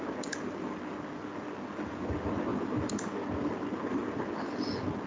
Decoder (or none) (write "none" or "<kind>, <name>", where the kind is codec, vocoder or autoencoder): none